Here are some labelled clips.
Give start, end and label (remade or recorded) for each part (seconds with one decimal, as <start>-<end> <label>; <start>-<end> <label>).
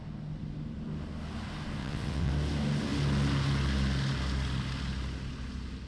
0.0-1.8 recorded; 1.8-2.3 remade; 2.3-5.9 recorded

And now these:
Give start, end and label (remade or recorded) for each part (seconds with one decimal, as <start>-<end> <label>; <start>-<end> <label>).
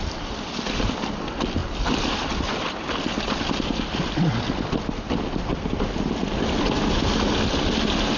0.0-8.2 recorded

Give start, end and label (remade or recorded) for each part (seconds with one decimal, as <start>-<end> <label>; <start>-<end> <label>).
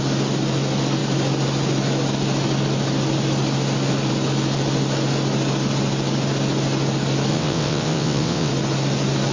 0.0-7.3 recorded; 7.3-8.5 remade; 8.5-9.3 recorded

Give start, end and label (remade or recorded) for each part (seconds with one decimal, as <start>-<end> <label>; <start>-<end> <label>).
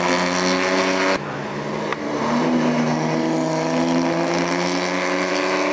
0.0-5.7 recorded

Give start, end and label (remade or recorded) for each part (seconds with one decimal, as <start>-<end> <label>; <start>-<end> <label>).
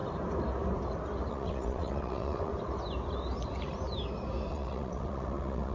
0.0-1.3 recorded; 1.3-2.5 remade; 2.5-4.5 recorded; 4.5-5.7 remade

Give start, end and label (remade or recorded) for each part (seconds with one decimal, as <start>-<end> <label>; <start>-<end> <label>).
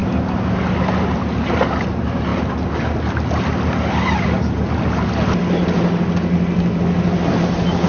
0.0-7.9 recorded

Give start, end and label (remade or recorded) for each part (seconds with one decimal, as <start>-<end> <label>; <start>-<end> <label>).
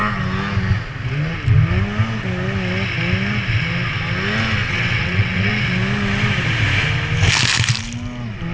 0.0-4.6 recorded; 4.6-5.5 remade; 5.5-8.5 recorded